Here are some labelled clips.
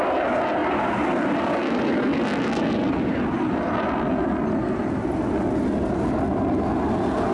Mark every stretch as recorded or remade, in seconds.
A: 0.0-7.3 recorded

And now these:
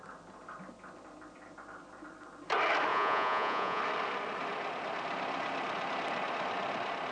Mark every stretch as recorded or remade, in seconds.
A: 0.0-2.9 recorded; 2.9-3.8 remade; 3.8-7.1 recorded

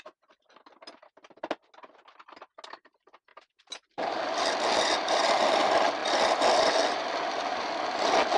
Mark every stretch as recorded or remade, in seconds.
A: 0.0-3.3 recorded; 3.3-4.2 remade; 4.2-8.4 recorded